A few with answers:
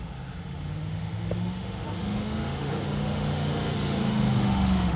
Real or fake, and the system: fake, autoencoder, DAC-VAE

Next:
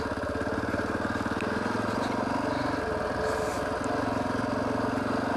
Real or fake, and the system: real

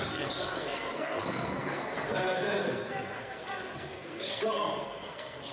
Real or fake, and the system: fake, codec, SNAC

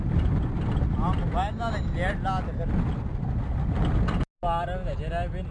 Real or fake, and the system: real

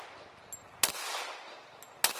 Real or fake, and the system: real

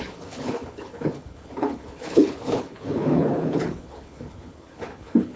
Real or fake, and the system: fake, codec, HILCodec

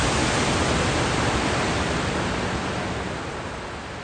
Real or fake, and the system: real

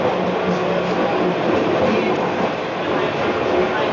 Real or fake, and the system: real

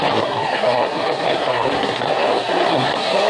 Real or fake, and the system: fake, codec, SNAC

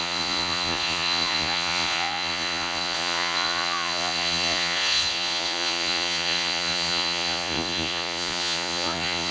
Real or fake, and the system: fake, vocoder, Vocos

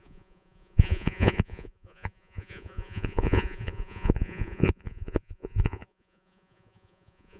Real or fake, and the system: fake, vocoder, Vocos